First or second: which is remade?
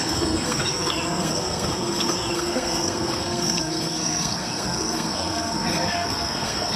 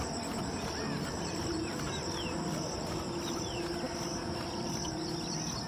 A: first